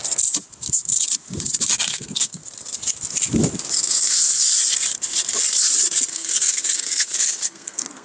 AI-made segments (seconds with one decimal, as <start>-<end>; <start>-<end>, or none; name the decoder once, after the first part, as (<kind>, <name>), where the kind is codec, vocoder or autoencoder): 1.9-2.4 (codec, SNAC); 3.8-4.5; 6.1-8.0